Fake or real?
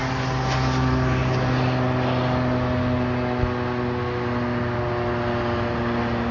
real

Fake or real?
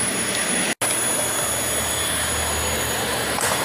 real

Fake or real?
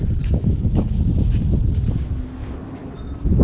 real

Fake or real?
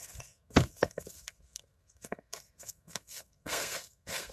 fake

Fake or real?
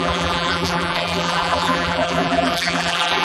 fake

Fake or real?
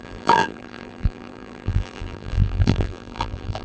fake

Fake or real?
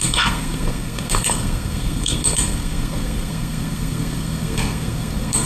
fake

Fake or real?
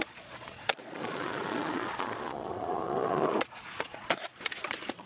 fake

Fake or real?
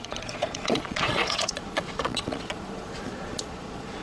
fake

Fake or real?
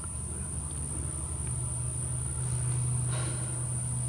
real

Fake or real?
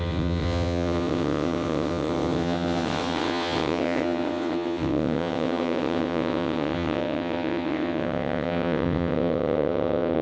fake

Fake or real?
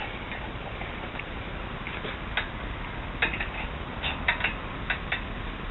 real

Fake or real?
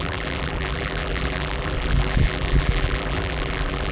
fake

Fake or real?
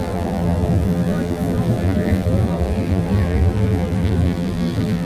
fake